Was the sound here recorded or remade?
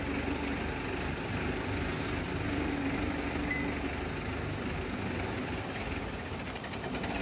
recorded